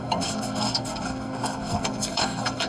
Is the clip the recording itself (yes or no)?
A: no